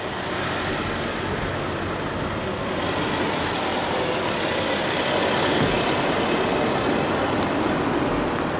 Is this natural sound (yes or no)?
yes